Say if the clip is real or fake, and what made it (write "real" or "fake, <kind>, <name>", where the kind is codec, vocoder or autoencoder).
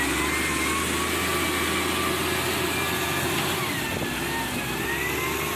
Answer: real